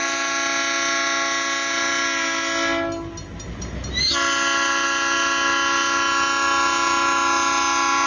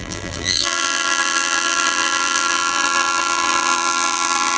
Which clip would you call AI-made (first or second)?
second